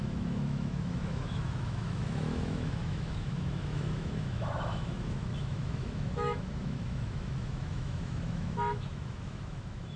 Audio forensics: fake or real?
fake